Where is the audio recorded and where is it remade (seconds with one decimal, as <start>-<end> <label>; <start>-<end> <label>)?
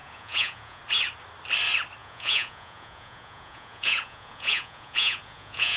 0.0-0.8 remade; 0.8-2.0 recorded; 2.0-5.8 remade